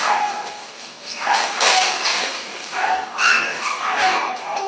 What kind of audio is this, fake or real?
fake